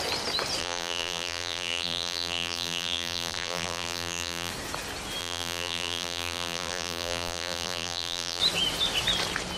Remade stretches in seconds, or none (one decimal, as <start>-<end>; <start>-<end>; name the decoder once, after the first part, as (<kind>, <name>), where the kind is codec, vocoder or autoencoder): 0.6-4.5 (vocoder, BigVGAN v2); 5.2-8.4